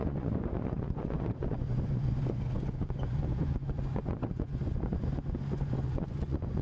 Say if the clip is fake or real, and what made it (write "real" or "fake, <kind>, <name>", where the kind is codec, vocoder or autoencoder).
fake, vocoder, Vocos